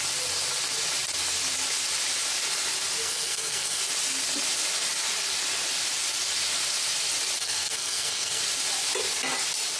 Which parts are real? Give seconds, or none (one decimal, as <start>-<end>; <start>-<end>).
0.0-3.0; 3.8-7.4; 8.4-9.8